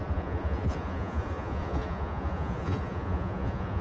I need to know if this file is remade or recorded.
remade